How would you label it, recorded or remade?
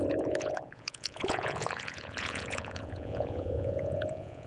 remade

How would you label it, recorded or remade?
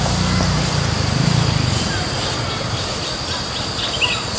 recorded